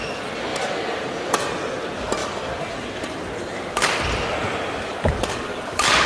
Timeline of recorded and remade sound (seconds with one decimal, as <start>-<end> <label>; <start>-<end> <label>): 0.0-6.1 recorded